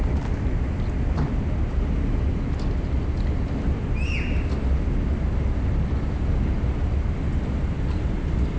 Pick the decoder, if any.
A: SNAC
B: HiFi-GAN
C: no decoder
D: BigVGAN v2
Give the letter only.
C